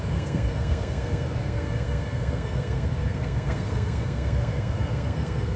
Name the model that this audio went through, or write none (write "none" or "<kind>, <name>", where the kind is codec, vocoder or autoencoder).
codec, SNAC